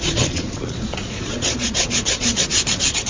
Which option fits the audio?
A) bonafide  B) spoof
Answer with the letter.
B